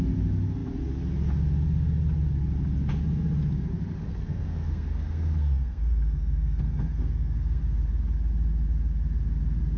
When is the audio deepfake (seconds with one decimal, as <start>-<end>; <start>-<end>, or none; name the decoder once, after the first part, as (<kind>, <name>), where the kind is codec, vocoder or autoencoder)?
4.0-7.6 (codec, SNAC)